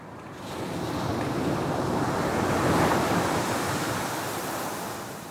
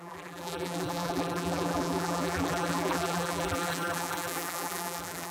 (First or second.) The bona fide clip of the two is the first